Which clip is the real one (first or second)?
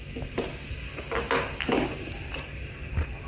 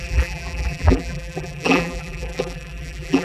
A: first